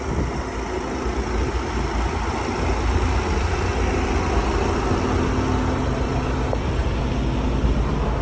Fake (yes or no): no